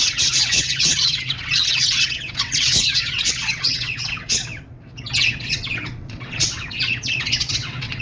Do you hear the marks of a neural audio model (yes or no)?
yes